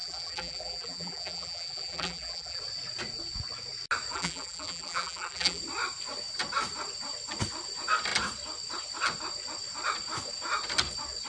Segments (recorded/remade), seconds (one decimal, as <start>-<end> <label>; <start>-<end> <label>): 0.0-2.6 remade; 2.6-4.1 recorded; 4.1-5.6 remade; 5.6-11.3 recorded